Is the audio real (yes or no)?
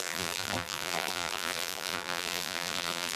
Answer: no